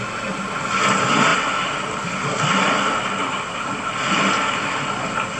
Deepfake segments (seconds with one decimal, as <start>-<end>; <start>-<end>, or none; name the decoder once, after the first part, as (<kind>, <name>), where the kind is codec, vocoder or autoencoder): none